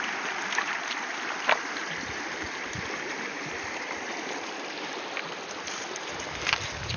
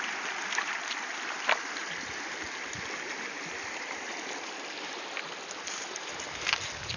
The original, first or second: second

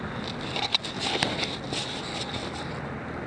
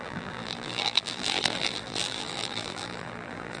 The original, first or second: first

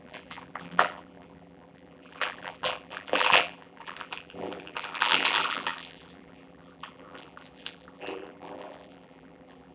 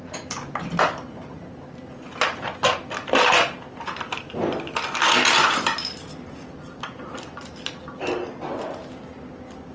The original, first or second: second